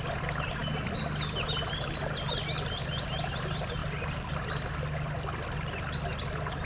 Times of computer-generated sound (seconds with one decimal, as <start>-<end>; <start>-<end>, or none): none